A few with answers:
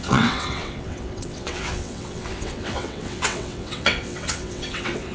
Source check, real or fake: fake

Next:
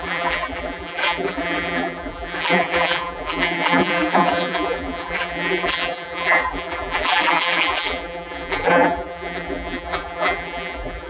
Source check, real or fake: fake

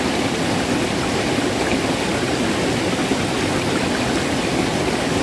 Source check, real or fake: real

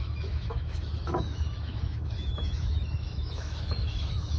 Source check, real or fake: fake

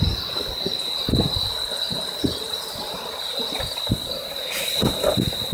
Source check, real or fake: real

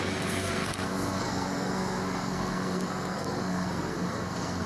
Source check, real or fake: fake